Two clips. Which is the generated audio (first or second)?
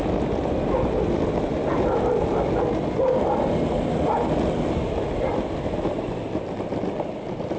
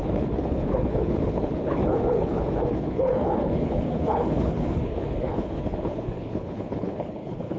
second